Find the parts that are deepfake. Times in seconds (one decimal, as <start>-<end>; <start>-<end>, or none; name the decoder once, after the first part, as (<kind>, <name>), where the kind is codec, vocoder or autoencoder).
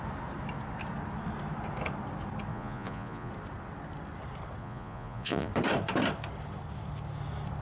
2.5-3.3 (vocoder, Vocos); 4.6-5.5